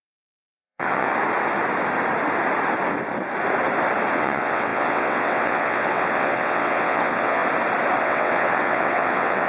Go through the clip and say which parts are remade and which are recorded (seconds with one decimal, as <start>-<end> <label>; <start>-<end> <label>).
0.0-1.1 remade; 1.1-4.1 recorded; 4.1-7.4 remade; 7.4-8.0 recorded; 8.0-9.5 remade